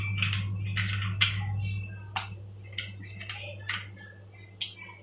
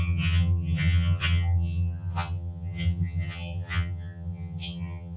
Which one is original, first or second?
first